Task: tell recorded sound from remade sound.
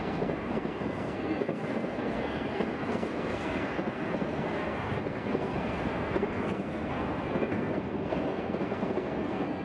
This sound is remade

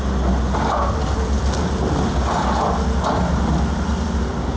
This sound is recorded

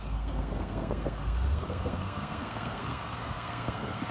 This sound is remade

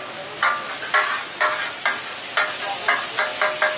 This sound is recorded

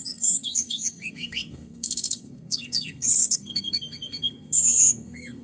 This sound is remade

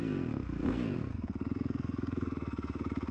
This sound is remade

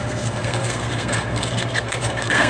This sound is remade